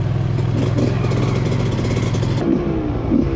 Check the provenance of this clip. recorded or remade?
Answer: recorded